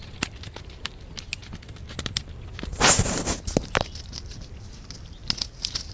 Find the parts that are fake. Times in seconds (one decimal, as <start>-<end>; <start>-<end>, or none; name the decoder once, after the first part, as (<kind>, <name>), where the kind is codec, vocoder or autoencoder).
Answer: none